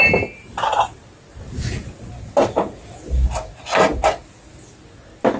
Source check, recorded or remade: recorded